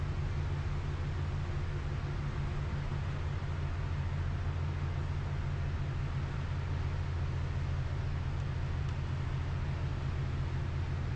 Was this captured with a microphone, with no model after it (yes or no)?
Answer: yes